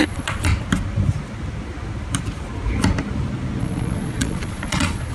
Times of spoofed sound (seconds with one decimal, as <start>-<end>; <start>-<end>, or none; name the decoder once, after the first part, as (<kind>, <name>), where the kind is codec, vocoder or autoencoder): 0.0-0.5 (vocoder, Vocos); 3.6-5.1